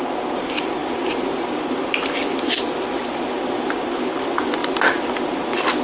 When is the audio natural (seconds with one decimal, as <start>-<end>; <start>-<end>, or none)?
0.0-5.8